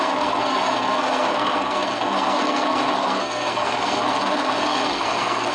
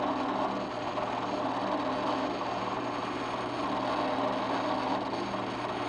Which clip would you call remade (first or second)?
first